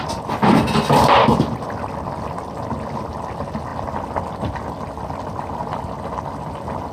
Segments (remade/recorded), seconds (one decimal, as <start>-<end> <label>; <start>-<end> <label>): 0.0-6.9 recorded

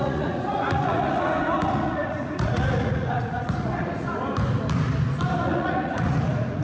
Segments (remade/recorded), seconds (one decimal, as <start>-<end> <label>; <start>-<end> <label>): 0.0-4.3 remade; 4.3-5.4 recorded; 5.4-6.6 remade